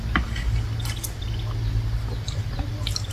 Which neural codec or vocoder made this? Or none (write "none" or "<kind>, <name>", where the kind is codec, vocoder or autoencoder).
none